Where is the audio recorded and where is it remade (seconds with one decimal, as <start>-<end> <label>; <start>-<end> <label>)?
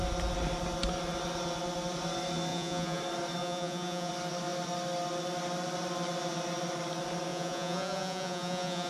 0.0-2.5 recorded; 2.5-3.0 remade; 3.0-3.4 recorded; 3.4-4.1 remade; 4.1-7.3 recorded; 7.3-8.9 remade